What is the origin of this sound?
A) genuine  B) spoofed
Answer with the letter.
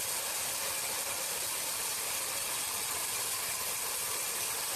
A